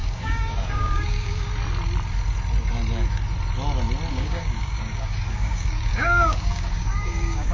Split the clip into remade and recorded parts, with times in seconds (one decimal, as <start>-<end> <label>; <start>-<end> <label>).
0.0-1.5 remade; 1.5-4.1 recorded; 4.1-7.5 remade